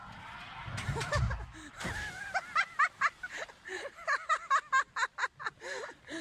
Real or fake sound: real